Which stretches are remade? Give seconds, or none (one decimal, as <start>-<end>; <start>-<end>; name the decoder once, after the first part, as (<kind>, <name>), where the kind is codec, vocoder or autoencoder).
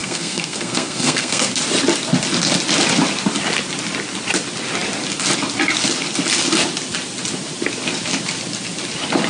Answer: 0.0-1.5 (codec, SNAC)